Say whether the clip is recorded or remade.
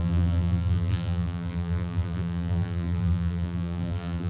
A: remade